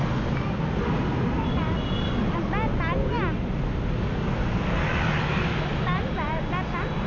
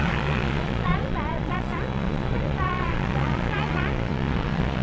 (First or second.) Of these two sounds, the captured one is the first